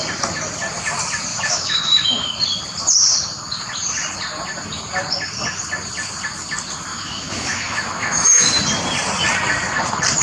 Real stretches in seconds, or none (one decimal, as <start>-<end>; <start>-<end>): 0.0-1.3; 2.3-6.9; 8.5-10.2